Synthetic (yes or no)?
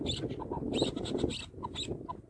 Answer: no